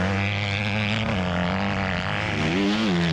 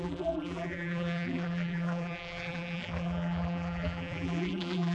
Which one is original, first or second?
first